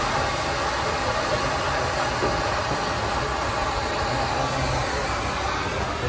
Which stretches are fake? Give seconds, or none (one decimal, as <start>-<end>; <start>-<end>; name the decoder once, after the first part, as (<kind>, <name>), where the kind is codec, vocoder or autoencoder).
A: none

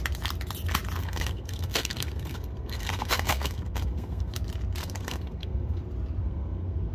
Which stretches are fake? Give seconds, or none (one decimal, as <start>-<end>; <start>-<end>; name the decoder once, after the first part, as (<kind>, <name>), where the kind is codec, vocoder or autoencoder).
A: 1.0-4.3 (codec, SNAC); 4.8-5.8; 6.2-6.9

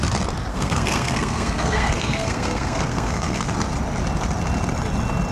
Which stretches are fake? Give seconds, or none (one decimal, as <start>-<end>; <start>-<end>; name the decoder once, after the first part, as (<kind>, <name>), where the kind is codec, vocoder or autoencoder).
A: 0.5-3.5 (codec, SNAC)

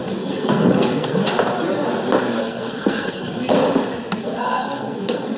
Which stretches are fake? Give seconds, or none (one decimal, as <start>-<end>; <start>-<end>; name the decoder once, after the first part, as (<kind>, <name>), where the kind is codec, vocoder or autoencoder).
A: 0.0-1.2 (codec, SNAC); 2.4-3.6; 4.2-5.4